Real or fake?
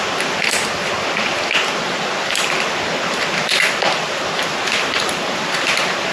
real